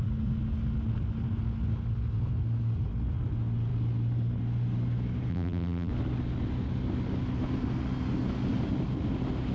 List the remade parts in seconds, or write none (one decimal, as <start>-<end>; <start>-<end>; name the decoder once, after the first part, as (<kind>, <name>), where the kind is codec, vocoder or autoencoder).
5.3-5.9 (vocoder, BigVGAN v2)